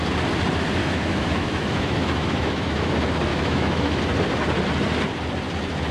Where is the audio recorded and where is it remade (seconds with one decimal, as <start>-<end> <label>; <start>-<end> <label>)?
0.0-0.8 recorded; 0.8-2.9 remade; 2.9-3.3 recorded; 3.3-4.0 remade; 4.0-5.9 recorded